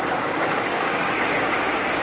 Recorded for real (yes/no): no